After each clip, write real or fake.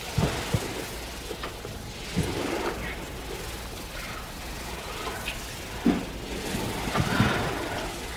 real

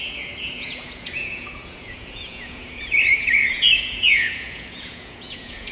fake